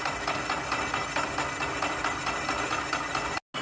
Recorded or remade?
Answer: recorded